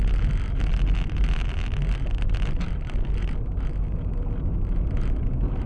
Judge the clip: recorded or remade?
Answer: recorded